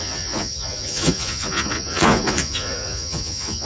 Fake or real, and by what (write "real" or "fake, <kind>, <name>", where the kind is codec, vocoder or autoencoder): fake, vocoder, Vocos